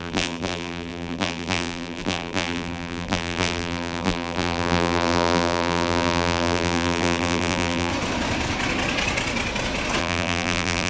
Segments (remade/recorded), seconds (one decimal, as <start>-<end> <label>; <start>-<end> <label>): 0.0-7.9 remade; 7.9-10.0 recorded; 10.0-10.9 remade